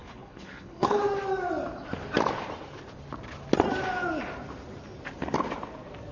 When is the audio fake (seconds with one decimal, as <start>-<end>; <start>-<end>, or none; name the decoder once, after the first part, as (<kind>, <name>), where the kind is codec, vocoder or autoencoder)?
0.0-1.0 (codec, HILCodec)